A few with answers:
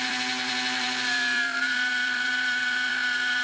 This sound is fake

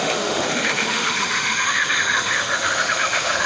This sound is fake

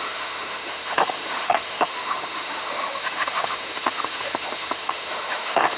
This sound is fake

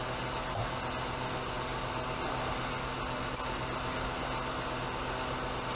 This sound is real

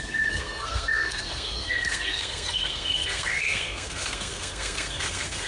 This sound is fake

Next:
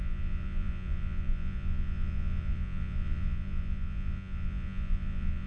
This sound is fake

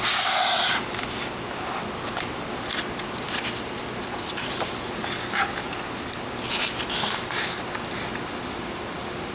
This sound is real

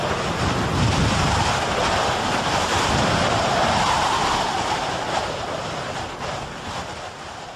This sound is real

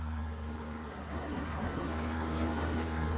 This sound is fake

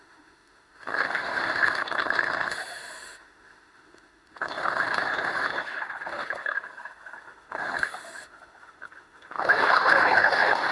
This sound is fake